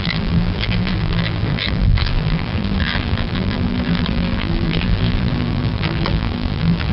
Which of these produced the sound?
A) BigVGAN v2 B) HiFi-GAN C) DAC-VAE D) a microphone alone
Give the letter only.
A